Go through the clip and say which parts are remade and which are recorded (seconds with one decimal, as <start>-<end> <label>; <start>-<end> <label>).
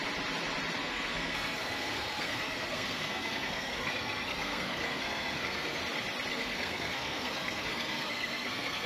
0.0-0.8 recorded; 0.8-5.8 remade; 5.8-6.3 recorded; 6.3-8.9 remade